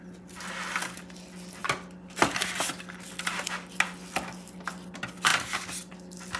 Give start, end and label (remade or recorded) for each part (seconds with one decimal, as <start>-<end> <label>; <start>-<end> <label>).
0.0-6.4 recorded